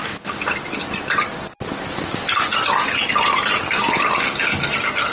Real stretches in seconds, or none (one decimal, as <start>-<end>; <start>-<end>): 0.0-5.1